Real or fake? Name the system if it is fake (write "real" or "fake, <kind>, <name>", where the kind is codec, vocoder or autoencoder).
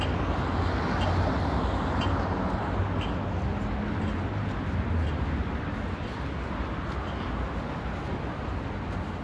real